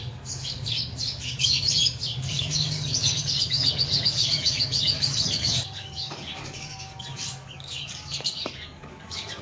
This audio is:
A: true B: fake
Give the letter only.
B